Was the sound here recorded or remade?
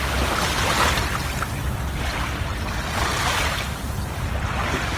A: recorded